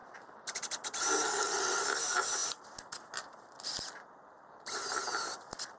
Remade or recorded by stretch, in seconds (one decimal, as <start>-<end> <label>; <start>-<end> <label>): 0.0-5.8 recorded

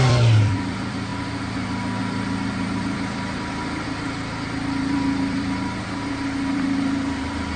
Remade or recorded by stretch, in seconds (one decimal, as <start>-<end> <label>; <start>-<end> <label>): 0.0-1.1 remade; 1.1-2.0 recorded; 2.0-7.6 remade